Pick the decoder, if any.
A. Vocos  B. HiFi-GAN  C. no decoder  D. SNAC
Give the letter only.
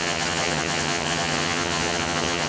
B